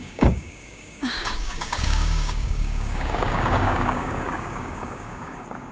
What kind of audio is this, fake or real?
fake